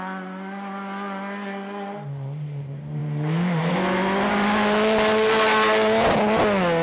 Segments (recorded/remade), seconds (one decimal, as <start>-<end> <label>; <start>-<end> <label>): 0.0-6.8 recorded